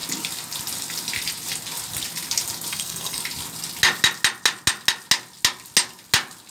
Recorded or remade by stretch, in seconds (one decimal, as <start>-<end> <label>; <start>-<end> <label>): 0.0-2.7 recorded; 2.7-3.2 remade; 3.2-6.5 recorded